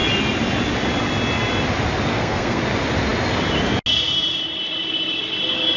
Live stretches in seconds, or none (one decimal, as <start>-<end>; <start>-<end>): 0.0-2.1; 2.6-5.8